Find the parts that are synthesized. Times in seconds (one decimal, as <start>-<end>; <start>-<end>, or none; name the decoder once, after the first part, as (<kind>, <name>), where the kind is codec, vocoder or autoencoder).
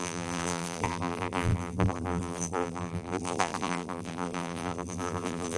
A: 0.0-5.6 (vocoder, BigVGAN v2)